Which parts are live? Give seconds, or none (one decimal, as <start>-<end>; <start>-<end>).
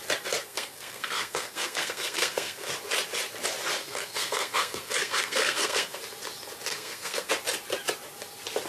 0.0-0.4; 2.7-3.8; 6.0-6.7; 7.3-8.7